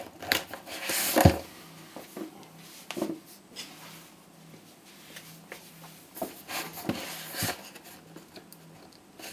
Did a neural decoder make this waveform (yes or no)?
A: no